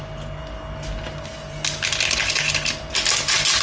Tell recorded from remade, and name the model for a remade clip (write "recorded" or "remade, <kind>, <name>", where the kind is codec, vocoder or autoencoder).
recorded